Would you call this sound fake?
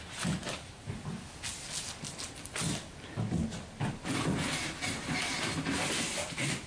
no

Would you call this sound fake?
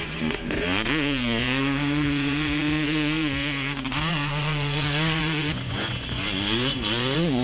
yes